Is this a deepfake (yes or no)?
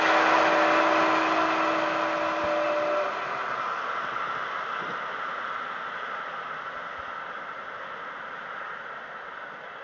no